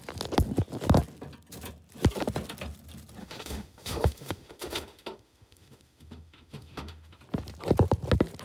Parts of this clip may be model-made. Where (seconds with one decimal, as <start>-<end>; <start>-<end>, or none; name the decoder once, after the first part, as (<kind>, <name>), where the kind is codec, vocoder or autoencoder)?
3.2-7.2 (autoencoder, DAC-VAE)